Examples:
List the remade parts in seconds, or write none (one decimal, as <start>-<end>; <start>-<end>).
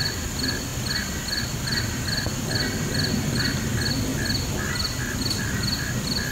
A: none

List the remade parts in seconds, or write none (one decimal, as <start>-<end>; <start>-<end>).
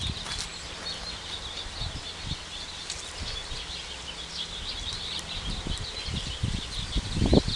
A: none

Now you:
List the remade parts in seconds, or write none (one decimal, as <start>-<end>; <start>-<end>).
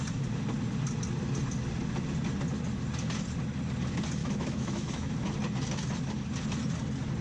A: 4.2-5.1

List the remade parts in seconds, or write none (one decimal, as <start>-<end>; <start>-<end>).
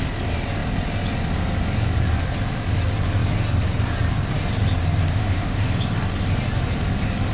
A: 5.1-5.7